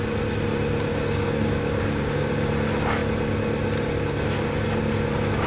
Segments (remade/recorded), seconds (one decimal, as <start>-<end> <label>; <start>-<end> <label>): 0.0-0.9 recorded; 0.9-2.3 remade; 2.3-5.5 recorded